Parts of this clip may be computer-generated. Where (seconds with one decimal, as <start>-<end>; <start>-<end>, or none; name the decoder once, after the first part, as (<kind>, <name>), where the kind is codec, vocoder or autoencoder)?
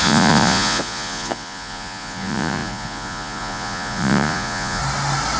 0.0-4.8 (vocoder, Vocos)